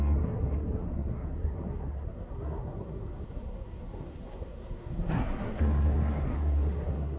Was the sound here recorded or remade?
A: remade